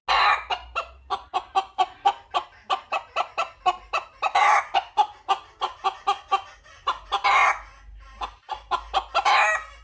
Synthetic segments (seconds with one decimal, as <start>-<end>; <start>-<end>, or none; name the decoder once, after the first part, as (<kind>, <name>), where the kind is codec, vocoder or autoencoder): none